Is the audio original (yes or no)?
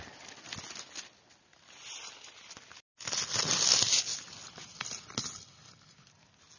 yes